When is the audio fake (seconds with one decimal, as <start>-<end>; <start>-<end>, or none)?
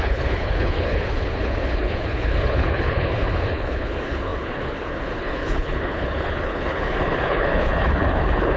0.0-8.6